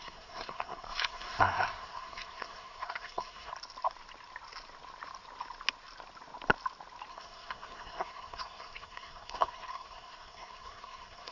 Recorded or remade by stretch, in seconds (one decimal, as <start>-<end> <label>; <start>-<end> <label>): 0.0-3.5 remade; 3.5-7.1 recorded; 7.1-11.3 remade